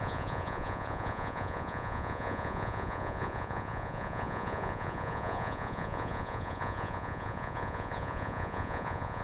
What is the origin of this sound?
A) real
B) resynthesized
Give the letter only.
B